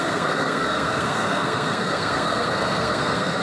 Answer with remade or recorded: remade